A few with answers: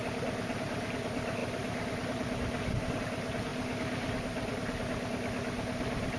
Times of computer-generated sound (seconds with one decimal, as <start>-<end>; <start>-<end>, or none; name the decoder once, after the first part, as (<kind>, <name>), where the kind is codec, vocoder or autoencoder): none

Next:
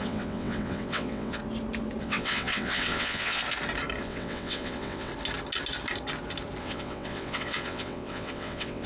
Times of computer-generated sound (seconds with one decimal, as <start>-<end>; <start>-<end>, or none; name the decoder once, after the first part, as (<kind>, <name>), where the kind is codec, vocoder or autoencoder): 0.0-1.4 (vocoder, WaveNeXt); 2.0-3.4; 4.0-5.1; 6.6-8.9

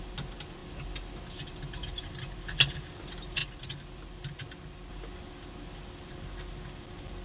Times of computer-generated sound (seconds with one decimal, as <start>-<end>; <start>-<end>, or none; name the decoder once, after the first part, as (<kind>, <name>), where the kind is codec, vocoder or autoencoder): none